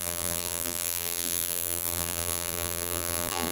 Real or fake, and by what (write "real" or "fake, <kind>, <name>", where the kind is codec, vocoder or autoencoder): fake, vocoder, BigVGAN v2